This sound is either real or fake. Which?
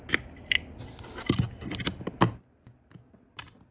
real